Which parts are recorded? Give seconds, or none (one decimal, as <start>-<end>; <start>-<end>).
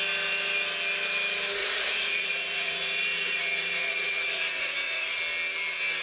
0.0-1.6; 5.2-6.0